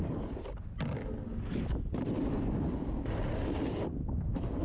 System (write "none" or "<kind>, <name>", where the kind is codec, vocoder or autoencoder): none